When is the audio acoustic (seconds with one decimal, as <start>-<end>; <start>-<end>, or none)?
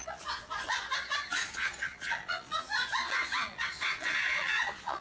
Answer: none